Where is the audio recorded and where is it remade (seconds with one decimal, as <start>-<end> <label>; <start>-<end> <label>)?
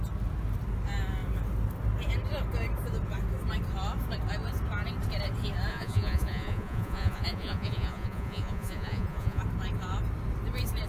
0.0-5.7 recorded; 5.7-9.4 remade; 9.4-10.9 recorded